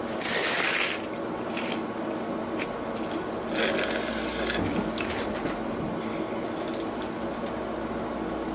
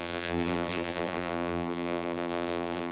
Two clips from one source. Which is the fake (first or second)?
second